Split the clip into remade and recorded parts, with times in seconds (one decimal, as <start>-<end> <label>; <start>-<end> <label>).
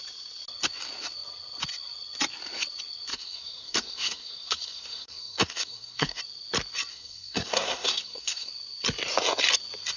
0.0-3.1 recorded; 3.1-6.2 remade; 6.2-6.9 recorded; 6.9-8.5 remade; 8.5-10.0 recorded